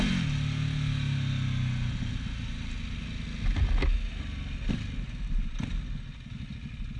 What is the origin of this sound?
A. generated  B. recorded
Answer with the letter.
B